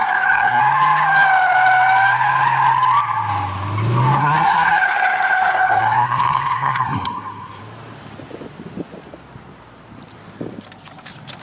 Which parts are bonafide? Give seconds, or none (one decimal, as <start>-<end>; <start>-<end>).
0.6-4.2; 7.6-11.4